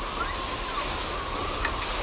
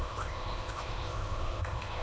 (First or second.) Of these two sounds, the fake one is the second